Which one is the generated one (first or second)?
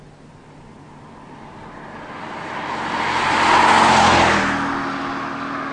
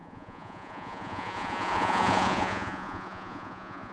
second